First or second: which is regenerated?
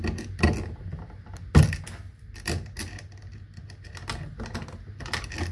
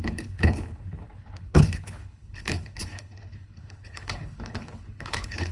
second